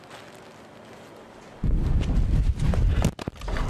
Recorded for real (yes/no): yes